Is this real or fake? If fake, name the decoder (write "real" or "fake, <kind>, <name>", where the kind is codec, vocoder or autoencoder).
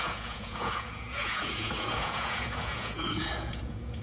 fake, vocoder, Vocos